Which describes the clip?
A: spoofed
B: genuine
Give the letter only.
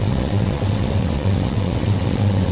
A